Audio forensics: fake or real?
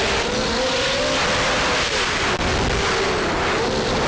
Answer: real